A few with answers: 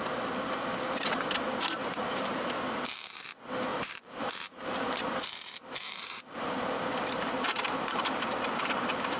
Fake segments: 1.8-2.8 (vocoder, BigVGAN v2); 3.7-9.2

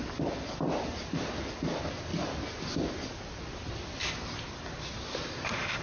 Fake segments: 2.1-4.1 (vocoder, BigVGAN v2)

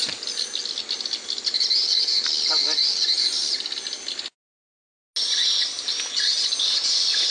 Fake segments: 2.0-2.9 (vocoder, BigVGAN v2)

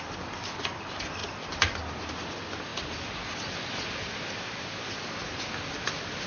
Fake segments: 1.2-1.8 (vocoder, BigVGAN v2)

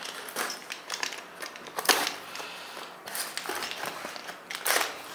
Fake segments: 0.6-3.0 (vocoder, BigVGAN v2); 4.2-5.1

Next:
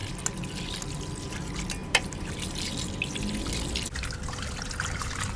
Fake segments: 1.8-2.9 (vocoder, BigVGAN v2)

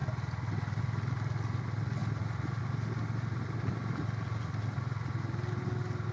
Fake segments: none